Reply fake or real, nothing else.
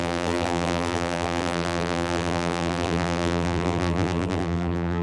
fake